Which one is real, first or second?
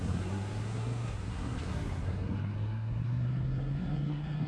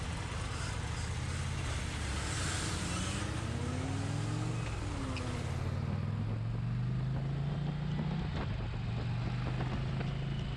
second